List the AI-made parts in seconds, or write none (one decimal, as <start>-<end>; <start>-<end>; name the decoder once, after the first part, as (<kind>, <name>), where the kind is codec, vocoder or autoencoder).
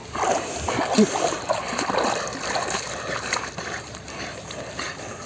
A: none